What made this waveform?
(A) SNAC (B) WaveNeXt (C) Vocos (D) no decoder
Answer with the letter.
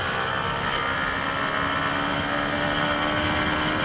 D